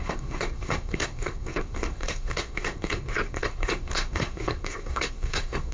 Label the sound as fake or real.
fake